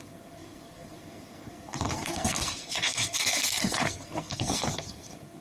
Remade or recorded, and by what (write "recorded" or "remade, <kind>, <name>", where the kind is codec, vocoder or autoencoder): remade, codec, SNAC